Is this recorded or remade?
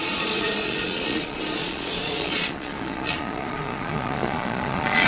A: remade